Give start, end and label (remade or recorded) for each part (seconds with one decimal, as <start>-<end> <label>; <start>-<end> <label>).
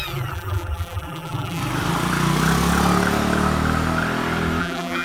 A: 0.0-1.6 remade; 1.6-4.6 recorded; 4.6-5.0 remade